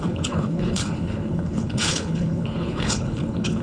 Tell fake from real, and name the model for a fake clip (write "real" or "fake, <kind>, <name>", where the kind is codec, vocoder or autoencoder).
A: fake, codec, HILCodec